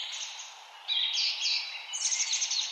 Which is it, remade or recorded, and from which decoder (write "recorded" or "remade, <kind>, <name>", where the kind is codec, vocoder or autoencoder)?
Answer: recorded